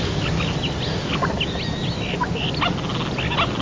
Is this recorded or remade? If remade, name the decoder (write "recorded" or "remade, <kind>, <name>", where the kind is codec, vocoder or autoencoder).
recorded